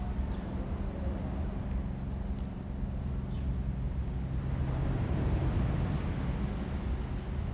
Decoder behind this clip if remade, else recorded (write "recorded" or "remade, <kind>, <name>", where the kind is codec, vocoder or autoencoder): recorded